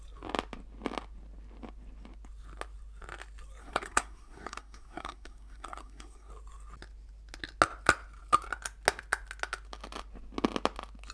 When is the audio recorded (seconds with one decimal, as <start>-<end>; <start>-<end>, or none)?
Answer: 0.0-3.6; 6.3-11.1